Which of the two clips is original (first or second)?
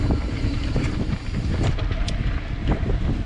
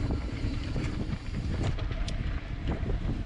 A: first